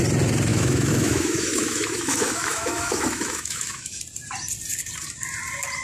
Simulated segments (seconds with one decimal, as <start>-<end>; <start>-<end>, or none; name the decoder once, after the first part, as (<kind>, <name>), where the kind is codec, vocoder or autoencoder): 0.5-4.0 (autoencoder, DAC-VAE)